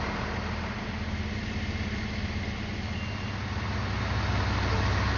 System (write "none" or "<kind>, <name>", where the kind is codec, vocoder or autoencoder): none